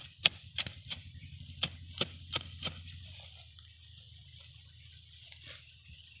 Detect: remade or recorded recorded